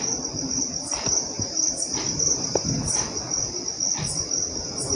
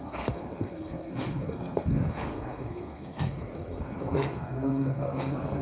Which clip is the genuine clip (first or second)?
first